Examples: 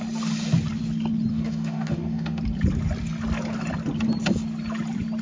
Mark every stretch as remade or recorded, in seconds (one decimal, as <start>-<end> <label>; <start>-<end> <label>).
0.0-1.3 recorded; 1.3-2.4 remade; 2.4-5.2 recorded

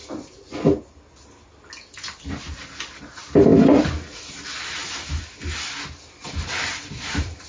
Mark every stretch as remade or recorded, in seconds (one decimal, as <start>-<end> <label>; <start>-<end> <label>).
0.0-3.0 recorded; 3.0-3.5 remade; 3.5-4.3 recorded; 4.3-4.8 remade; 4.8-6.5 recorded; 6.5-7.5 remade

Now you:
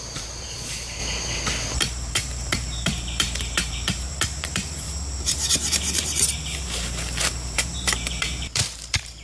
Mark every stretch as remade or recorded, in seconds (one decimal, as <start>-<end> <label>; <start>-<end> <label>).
0.0-1.0 remade; 1.0-1.8 recorded; 1.8-9.2 remade

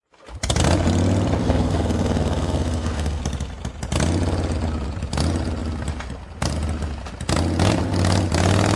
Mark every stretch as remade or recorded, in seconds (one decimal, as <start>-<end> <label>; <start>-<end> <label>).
0.0-1.4 recorded; 1.4-3.2 remade; 3.2-8.8 recorded

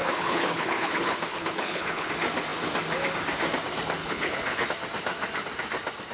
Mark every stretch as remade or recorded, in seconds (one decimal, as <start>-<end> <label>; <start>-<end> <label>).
0.0-2.1 remade; 2.1-4.0 recorded; 4.0-4.7 remade; 4.7-6.1 recorded

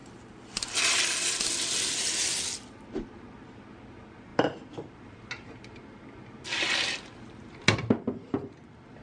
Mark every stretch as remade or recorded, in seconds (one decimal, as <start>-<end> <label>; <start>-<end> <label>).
0.0-4.3 recorded; 4.3-5.5 remade; 5.5-9.0 recorded

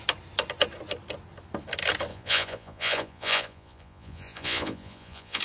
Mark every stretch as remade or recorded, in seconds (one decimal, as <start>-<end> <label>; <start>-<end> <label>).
0.0-2.1 recorded; 2.1-5.4 remade

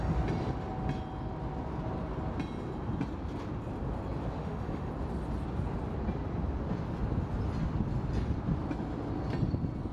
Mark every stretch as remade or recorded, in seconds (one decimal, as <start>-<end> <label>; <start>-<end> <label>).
0.0-4.4 recorded; 4.4-4.9 remade; 4.9-9.9 recorded